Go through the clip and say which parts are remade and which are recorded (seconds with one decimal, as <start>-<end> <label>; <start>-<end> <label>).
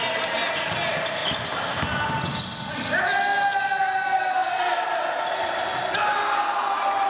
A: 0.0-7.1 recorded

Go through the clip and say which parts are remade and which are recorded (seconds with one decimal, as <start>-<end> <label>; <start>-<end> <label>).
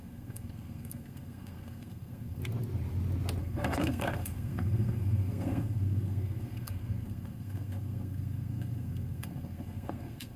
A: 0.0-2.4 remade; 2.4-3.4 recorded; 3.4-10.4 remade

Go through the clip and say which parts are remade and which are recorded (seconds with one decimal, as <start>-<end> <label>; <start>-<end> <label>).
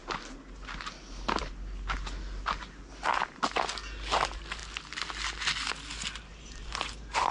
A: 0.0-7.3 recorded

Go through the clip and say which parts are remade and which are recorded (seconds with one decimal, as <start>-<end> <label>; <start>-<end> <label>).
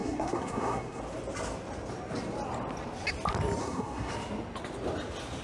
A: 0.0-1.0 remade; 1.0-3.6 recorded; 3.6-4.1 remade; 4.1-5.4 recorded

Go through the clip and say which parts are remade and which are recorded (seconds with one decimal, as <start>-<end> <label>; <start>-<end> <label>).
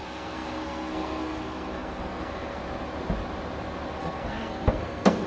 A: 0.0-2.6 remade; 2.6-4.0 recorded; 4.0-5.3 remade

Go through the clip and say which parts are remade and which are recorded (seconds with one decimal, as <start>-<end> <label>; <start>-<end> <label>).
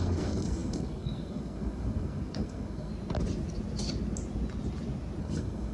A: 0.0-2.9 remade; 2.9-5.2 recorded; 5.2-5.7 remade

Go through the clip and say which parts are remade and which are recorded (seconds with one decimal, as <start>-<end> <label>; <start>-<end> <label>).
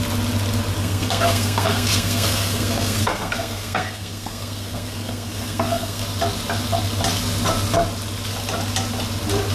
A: 0.0-0.8 recorded; 0.8-6.0 remade; 6.0-9.5 recorded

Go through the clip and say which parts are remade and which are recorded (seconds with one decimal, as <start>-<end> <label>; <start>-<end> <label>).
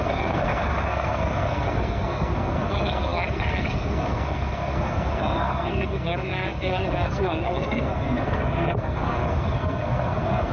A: 0.0-10.5 remade